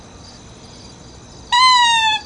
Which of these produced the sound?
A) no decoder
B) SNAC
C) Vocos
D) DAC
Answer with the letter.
A